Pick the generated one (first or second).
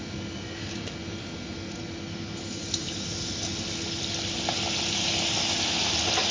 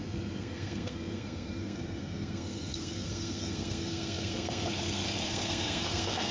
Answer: second